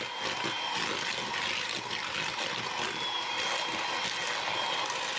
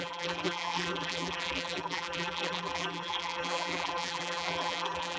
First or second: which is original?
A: first